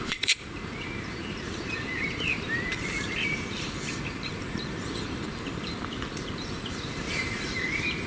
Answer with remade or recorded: remade